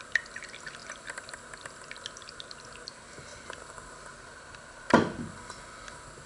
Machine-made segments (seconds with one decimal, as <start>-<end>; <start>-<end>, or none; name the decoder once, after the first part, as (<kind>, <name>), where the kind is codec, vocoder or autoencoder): none